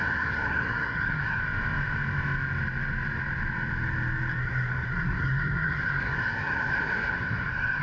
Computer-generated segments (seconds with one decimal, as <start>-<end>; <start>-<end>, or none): 0.0-1.4; 4.4-7.8